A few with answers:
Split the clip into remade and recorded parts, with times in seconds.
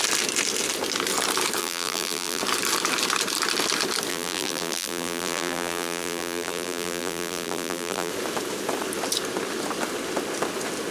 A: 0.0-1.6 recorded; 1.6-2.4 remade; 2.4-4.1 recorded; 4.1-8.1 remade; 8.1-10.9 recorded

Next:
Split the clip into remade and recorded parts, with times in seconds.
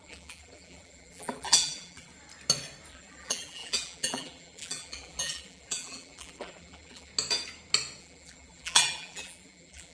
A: 0.0-2.1 remade; 2.1-2.9 recorded; 2.9-7.1 remade; 7.1-8.0 recorded; 8.0-9.9 remade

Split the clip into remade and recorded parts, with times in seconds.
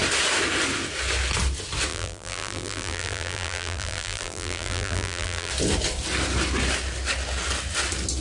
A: 0.0-1.9 recorded; 1.9-5.5 remade; 5.5-8.2 recorded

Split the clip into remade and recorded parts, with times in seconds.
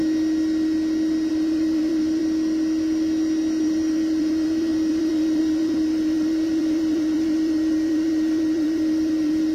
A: 0.0-1.3 recorded; 1.3-2.2 remade; 2.2-3.6 recorded; 3.6-9.5 remade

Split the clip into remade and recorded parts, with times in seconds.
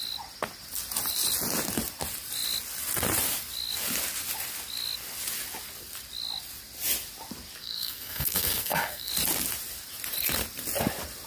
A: 0.0-7.6 recorded; 7.6-9.1 remade; 9.1-11.3 recorded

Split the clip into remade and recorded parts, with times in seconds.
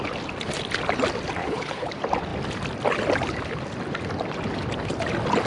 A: 0.0-1.4 recorded; 1.4-1.9 remade; 1.9-5.5 recorded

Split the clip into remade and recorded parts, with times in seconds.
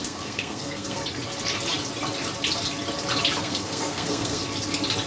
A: 0.0-1.0 remade; 1.0-3.4 recorded; 3.4-4.4 remade; 4.4-5.1 recorded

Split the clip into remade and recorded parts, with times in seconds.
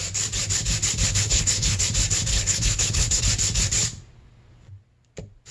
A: 0.0-1.1 recorded; 1.1-1.8 remade; 1.8-2.3 recorded; 2.3-3.2 remade; 3.2-5.5 recorded